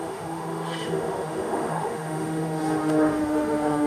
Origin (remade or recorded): remade